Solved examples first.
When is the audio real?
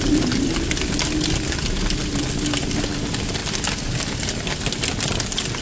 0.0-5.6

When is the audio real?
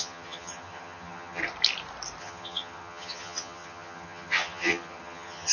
1.4-2.2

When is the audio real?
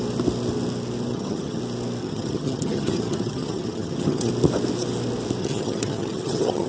0.0-1.1; 1.6-2.0; 4.3-5.4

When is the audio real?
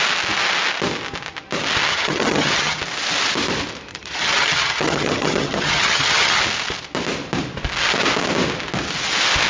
0.0-1.9; 2.8-3.9; 6.4-9.5